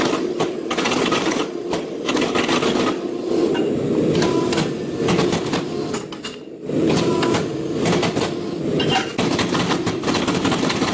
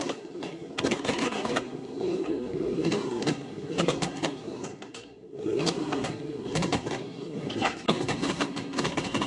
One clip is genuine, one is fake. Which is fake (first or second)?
second